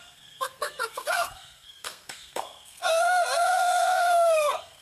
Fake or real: fake